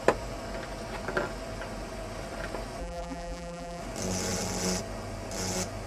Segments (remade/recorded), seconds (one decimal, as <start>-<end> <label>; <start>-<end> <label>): 0.0-2.8 recorded; 2.8-3.8 remade; 3.8-5.9 recorded